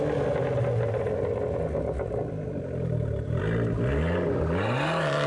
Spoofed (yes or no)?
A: no